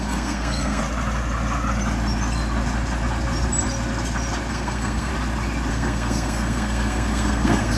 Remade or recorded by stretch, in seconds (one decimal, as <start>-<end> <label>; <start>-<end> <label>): 0.0-0.8 remade; 0.8-4.5 recorded; 4.5-5.1 remade; 5.1-5.7 recorded; 5.7-7.8 remade

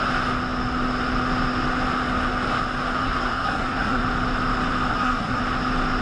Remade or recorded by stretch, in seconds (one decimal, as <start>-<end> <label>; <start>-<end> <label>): 0.0-3.0 recorded; 3.0-4.0 remade; 4.0-4.9 recorded; 4.9-5.4 remade; 5.4-6.0 recorded

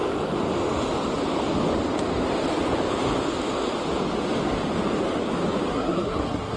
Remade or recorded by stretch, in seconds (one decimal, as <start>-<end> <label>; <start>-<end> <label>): 0.0-5.7 recorded; 5.7-6.6 remade

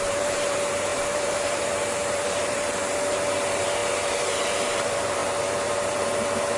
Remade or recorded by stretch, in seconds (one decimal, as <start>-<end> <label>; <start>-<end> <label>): 0.0-6.6 remade

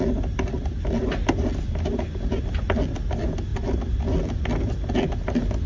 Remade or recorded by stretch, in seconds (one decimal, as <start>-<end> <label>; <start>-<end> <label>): 0.0-5.7 recorded